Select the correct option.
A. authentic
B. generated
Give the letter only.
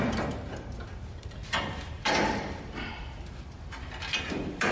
B